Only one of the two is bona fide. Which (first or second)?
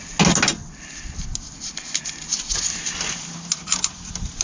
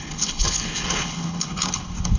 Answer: first